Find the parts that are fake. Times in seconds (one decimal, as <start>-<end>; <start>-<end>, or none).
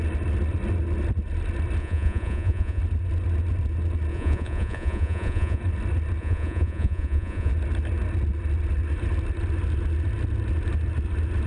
1.8-2.8; 4.1-5.6; 6.2-7.5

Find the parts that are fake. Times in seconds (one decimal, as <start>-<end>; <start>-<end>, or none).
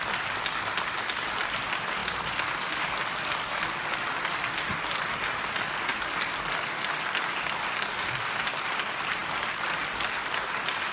2.0-3.3; 9.2-9.9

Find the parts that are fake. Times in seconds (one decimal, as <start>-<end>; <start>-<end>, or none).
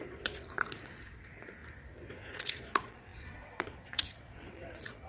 0.0-1.6; 2.1-5.1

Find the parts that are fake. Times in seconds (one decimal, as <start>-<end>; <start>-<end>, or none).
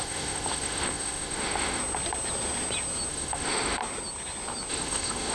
0.0-1.8; 3.1-3.8; 4.7-5.3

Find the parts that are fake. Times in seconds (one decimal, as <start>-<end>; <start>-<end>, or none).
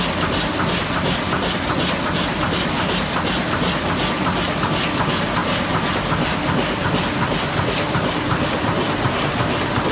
none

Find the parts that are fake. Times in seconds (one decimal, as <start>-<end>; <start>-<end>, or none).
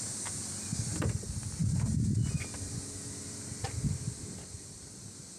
none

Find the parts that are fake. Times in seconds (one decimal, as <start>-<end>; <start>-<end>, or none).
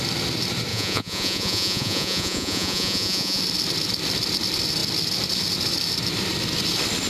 0.7-3.4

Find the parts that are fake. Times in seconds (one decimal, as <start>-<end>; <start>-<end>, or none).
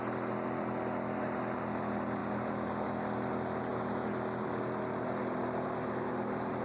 none